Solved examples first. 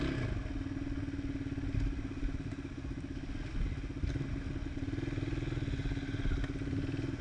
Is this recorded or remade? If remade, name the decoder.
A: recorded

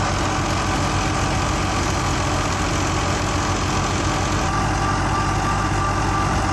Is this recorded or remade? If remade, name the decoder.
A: recorded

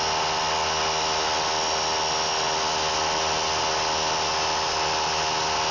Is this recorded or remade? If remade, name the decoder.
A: recorded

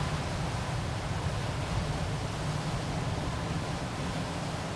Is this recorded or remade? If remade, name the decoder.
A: recorded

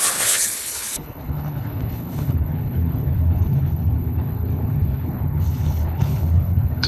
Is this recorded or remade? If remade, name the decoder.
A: remade, codec, HILCodec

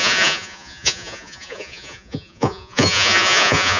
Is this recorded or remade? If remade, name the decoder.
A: remade, vocoder, Vocos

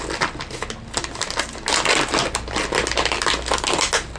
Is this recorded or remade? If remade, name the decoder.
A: recorded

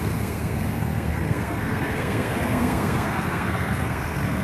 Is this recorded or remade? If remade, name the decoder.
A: remade, codec, SNAC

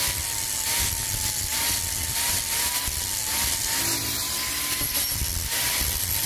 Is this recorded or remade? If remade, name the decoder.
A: recorded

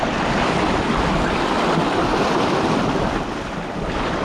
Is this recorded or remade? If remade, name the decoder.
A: recorded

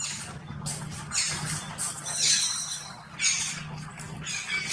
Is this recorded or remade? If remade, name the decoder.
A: recorded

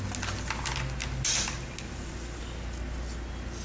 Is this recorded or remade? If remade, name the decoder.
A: recorded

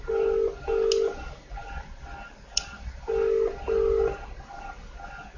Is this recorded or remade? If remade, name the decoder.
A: recorded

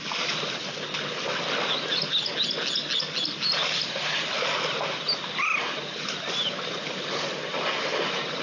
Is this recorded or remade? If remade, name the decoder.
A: recorded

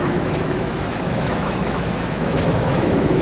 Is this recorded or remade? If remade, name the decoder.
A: remade, autoencoder, DAC-VAE